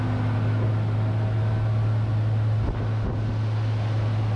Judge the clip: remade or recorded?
recorded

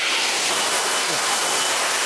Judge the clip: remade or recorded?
recorded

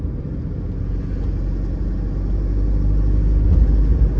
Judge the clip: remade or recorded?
recorded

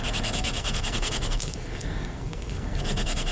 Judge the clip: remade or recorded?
remade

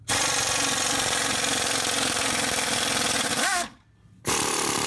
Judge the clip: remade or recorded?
recorded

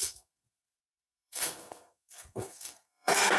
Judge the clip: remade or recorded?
remade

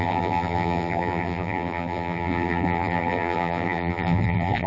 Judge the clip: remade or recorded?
remade